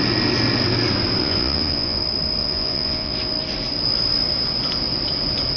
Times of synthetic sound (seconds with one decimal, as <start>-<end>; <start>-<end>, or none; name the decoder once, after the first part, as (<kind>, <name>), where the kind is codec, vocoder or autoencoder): 1.2-2.0 (vocoder, Vocos); 2.4-3.1